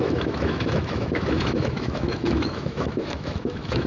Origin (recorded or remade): remade